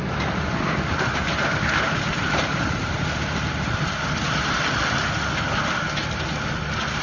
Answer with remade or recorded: recorded